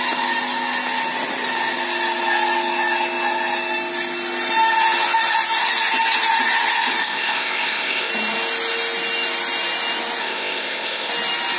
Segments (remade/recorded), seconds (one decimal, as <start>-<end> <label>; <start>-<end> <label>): 0.0-7.0 recorded; 7.0-8.1 remade; 8.1-10.2 recorded; 10.2-11.1 remade; 11.1-11.6 recorded